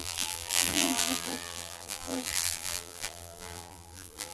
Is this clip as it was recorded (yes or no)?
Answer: no